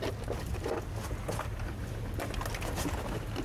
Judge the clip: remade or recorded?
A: recorded